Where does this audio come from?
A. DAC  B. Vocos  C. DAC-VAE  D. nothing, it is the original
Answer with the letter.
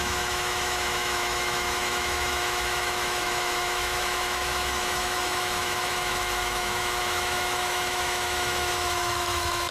C